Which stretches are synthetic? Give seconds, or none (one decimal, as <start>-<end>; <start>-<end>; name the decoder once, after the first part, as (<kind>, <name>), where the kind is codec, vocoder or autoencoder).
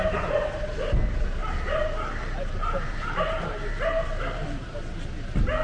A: 1.4-4.8 (vocoder, BigVGAN v2)